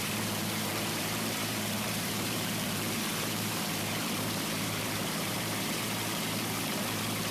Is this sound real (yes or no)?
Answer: no